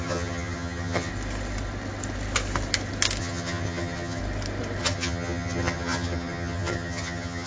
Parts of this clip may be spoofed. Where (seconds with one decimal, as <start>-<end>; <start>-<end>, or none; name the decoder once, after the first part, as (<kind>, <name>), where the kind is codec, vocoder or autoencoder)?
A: 0.0-1.1 (vocoder, HiFi-GAN); 3.2-4.2; 4.8-7.5